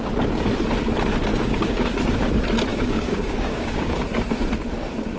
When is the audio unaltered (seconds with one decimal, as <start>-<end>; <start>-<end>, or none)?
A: 0.0-1.3; 1.9-2.7; 4.0-5.2